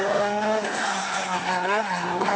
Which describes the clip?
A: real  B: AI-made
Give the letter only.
B